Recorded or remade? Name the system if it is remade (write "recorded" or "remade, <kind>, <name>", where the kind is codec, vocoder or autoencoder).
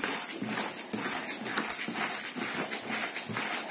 recorded